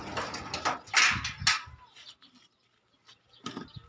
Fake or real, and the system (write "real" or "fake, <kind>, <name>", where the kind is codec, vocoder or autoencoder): real